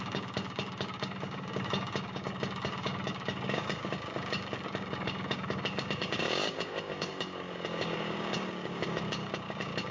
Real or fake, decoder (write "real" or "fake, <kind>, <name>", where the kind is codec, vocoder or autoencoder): fake, codec, DAC